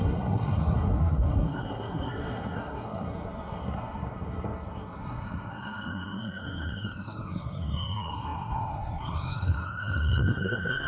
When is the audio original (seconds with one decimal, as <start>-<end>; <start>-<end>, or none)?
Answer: none